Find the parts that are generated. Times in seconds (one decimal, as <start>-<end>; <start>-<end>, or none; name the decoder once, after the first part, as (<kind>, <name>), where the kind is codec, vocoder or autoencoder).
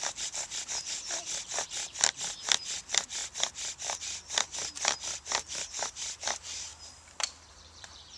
0.0-3.2 (vocoder, BigVGAN v2); 4.0-6.7; 7.5-8.2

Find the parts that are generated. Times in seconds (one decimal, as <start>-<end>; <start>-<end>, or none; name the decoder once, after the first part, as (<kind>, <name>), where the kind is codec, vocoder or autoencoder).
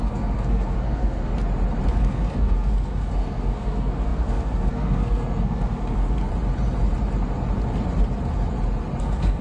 0.0-1.3 (codec, SNAC); 1.9-6.3; 9.0-9.4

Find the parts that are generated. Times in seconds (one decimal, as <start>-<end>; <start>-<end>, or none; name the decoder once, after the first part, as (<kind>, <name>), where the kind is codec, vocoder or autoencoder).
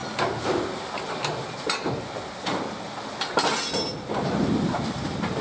none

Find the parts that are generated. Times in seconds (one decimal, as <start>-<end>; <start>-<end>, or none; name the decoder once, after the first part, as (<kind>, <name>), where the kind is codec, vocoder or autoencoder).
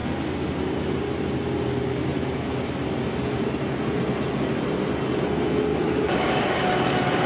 5.7-6.7 (codec, DAC)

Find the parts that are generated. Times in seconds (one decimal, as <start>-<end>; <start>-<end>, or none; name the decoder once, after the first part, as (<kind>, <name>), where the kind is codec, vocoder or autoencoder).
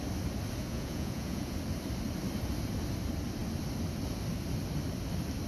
0.7-1.6 (vocoder, Vocos)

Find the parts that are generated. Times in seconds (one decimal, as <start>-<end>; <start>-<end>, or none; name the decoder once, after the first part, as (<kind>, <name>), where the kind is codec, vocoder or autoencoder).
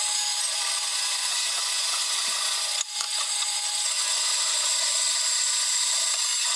0.9-4.9 (vocoder, Vocos)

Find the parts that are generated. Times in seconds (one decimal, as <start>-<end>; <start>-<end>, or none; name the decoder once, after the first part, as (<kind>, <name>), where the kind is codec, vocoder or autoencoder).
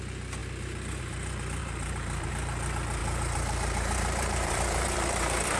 1.6-2.3 (vocoder, BigVGAN v2); 3.0-5.6